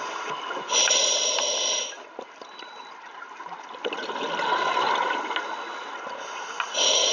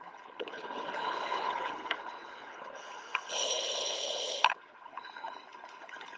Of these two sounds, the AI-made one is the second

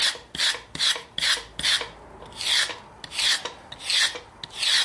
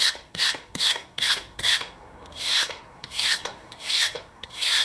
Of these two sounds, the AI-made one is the second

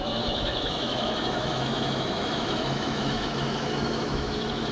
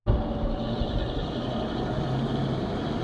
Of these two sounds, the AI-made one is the first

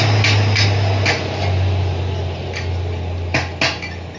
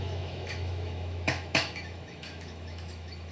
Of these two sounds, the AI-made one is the second